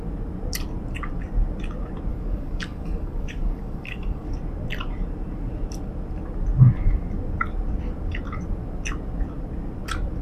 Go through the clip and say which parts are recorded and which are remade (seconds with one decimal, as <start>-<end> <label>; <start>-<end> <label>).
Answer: 0.0-2.1 recorded; 2.1-4.3 remade; 4.3-10.2 recorded